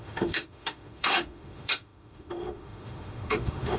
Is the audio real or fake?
fake